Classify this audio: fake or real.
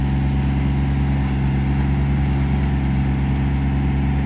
real